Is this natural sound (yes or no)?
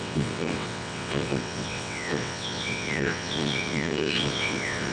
no